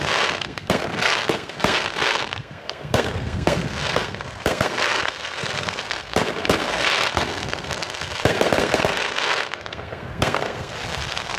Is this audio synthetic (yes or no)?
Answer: yes